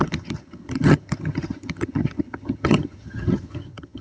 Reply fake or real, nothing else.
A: fake